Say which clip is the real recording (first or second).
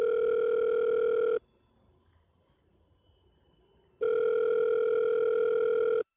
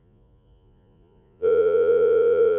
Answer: first